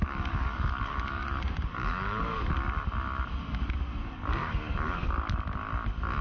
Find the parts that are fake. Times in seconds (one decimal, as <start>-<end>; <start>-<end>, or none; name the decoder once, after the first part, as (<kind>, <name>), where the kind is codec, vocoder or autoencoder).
0.0-2.5 (codec, DAC); 4.4-5.1